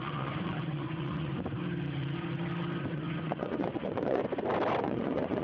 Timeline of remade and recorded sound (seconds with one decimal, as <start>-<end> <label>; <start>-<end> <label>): 0.0-1.3 remade; 1.3-2.8 recorded; 2.8-4.2 remade; 4.2-4.8 recorded; 4.8-5.4 remade